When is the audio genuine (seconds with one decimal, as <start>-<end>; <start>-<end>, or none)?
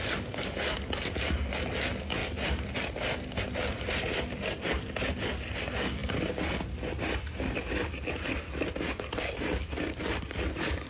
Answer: 0.0-10.9